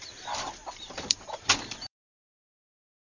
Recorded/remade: remade